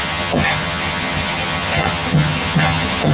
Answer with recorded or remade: remade